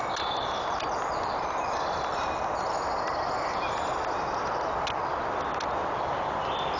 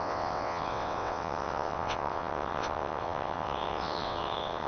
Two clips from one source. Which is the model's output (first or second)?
second